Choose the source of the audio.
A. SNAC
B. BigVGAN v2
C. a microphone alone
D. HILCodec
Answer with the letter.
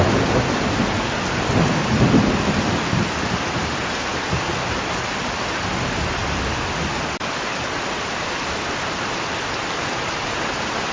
C